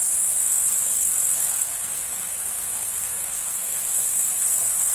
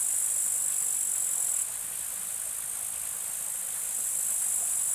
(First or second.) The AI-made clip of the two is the first